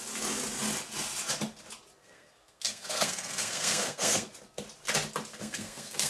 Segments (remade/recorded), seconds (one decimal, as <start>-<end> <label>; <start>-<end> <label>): 0.0-2.0 recorded; 2.0-4.3 remade; 4.3-5.3 recorded; 5.3-6.1 remade